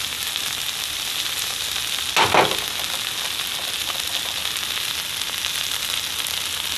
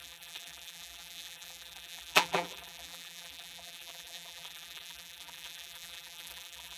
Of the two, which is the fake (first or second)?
second